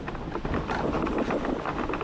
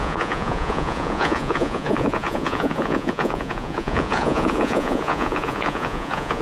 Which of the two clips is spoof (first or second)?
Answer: second